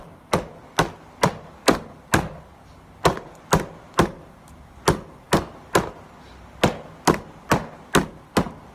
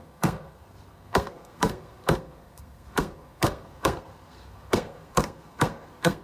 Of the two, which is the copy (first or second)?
second